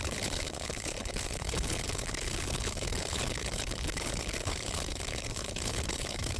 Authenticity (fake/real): fake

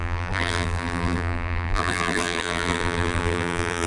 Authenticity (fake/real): fake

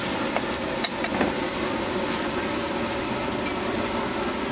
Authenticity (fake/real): real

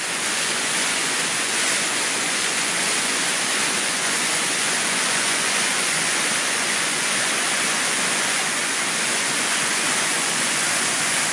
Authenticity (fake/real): fake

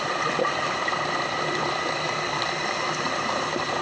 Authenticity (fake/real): fake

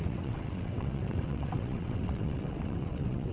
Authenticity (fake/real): fake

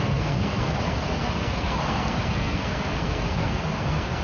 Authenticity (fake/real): fake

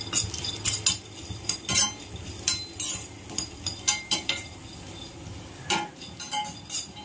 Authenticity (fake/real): real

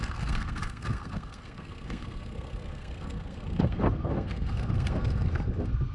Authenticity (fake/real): fake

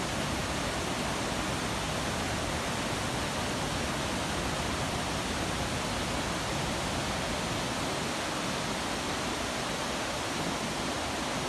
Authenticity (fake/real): real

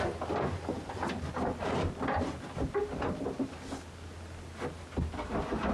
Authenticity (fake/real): real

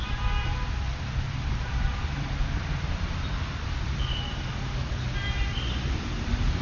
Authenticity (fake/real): fake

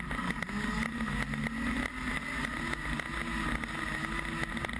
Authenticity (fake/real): real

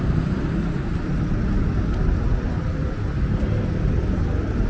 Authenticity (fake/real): real